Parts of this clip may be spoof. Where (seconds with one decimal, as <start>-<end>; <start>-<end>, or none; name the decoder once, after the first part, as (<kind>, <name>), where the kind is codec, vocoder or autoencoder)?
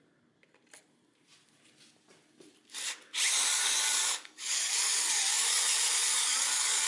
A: 3.4-5.6 (codec, DAC); 6.1-6.9